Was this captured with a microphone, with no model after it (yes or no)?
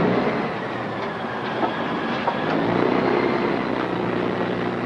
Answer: yes